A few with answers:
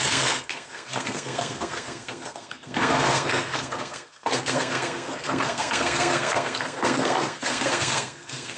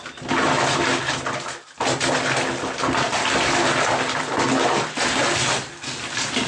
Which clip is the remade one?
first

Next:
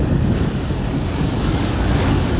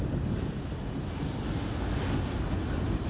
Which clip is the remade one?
first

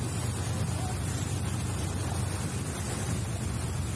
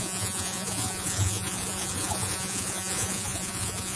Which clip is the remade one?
second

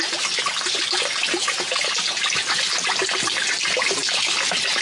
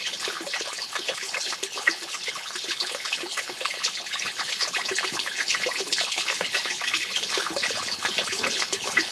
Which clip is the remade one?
second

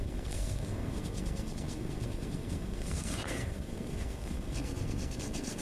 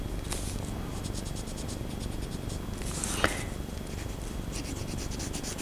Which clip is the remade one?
first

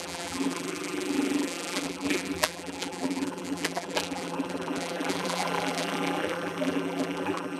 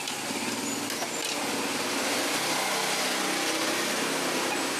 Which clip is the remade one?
first